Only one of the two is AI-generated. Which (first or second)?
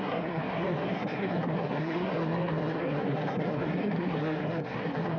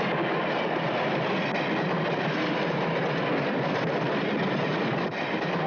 first